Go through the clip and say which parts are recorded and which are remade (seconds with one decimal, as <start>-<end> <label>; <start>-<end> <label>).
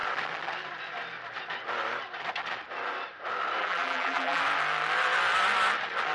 0.0-3.6 recorded; 3.6-4.4 remade; 4.4-6.1 recorded